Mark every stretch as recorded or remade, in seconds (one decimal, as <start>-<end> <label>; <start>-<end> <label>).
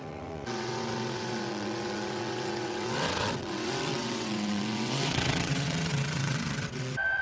0.0-7.2 remade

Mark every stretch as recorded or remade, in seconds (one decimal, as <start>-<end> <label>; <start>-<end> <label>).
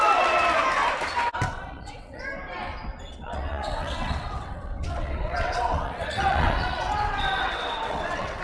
0.0-1.5 recorded; 1.5-2.2 remade; 2.2-3.1 recorded; 3.1-8.4 remade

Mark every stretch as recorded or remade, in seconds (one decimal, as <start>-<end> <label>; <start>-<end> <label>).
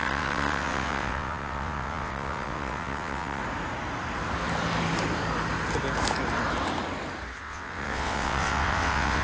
0.0-3.4 remade; 3.4-7.4 recorded; 7.4-9.2 remade